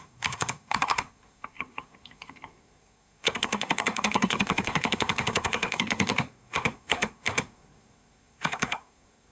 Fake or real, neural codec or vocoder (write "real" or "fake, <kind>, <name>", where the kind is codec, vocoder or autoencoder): fake, codec, SNAC